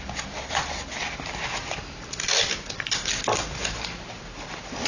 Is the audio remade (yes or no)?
no